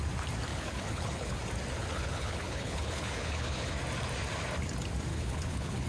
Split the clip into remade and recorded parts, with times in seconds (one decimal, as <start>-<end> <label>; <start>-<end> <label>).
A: 0.0-0.5 recorded; 0.5-1.4 remade; 1.4-1.8 recorded; 1.8-3.7 remade; 3.7-5.1 recorded; 5.1-5.9 remade